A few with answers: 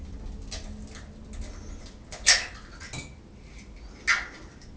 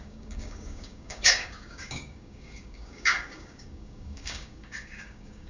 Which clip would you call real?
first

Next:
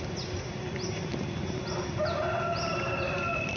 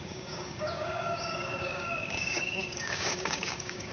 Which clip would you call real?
first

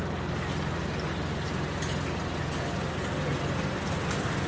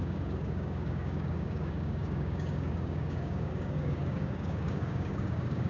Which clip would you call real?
first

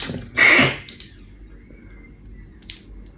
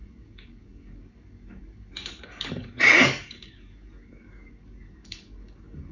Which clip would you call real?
first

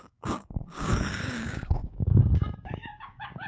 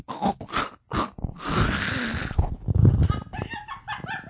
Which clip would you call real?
second